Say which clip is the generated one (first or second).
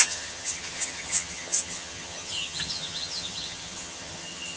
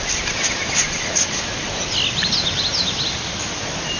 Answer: first